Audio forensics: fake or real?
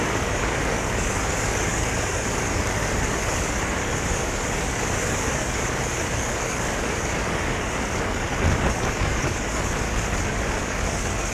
fake